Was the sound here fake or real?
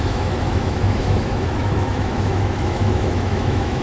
fake